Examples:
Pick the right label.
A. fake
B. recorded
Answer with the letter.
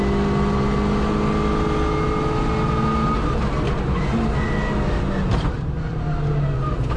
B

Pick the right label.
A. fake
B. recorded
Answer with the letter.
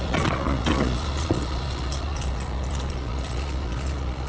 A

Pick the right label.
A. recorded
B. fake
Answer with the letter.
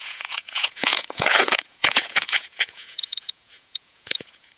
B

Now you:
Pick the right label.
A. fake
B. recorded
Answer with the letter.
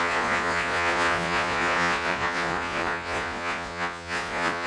A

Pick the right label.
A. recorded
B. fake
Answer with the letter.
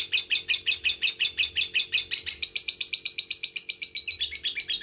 A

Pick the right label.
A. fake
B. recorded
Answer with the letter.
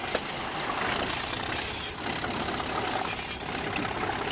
B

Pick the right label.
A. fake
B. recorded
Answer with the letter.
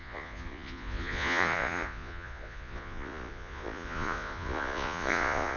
A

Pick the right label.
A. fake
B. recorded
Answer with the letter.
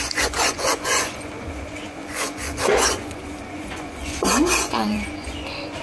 A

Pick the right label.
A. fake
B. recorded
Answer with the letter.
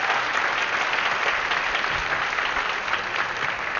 B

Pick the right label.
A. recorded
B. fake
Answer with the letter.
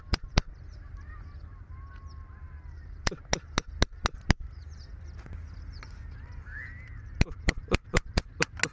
A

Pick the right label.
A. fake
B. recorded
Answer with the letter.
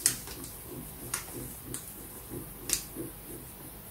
B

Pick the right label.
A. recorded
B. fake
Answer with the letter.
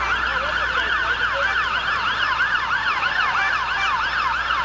A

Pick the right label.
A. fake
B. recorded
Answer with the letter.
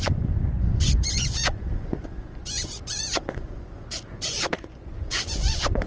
A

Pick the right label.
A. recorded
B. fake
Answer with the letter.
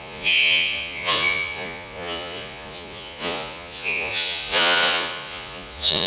B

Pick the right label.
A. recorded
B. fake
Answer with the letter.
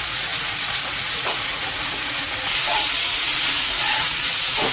B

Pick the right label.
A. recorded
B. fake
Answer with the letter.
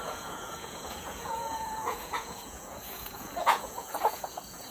B